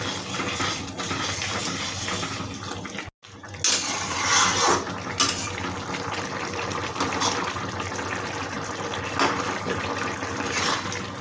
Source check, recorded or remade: recorded